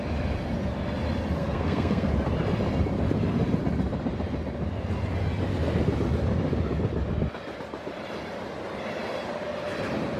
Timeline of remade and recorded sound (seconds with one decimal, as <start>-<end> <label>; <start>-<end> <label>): 0.0-1.4 recorded; 1.4-2.1 remade; 2.1-10.2 recorded